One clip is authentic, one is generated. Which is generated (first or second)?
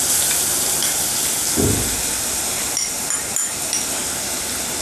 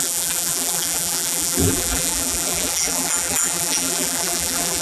second